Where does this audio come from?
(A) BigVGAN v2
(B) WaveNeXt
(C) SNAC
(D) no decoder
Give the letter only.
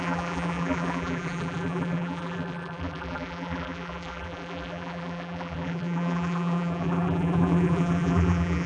A